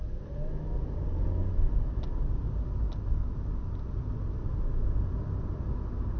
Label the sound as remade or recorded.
recorded